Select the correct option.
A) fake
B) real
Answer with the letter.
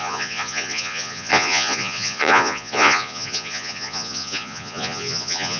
A